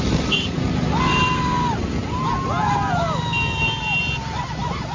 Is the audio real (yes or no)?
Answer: yes